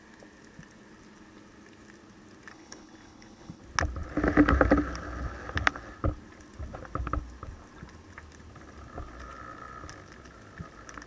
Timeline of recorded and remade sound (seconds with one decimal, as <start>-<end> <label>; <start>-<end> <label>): 0.0-2.5 recorded; 2.5-3.6 remade; 3.6-11.1 recorded

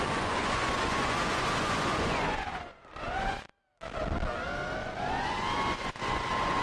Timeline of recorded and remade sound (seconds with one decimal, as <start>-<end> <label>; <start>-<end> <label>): 0.0-3.5 remade; 3.5-4.8 recorded; 4.8-6.6 remade

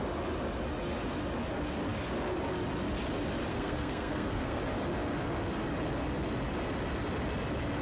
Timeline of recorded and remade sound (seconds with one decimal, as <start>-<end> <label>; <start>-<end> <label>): 0.0-3.5 recorded; 3.5-4.6 remade; 4.6-7.8 recorded

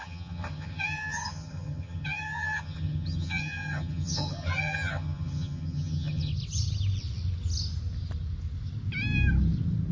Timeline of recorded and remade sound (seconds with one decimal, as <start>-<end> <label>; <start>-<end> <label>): 0.0-6.3 remade; 6.3-9.9 recorded